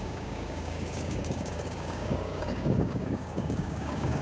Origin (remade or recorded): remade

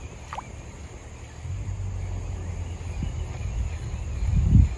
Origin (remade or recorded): recorded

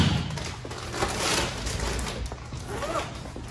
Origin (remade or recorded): recorded